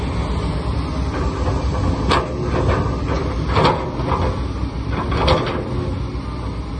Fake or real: real